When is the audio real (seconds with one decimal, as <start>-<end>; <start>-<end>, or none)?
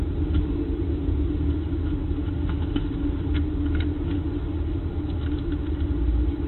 0.0-6.5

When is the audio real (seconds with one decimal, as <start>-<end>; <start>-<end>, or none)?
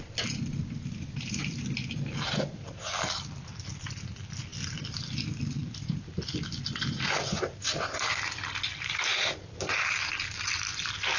0.0-1.4; 3.7-4.5; 7.4-11.2